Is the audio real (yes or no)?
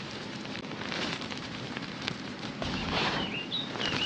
no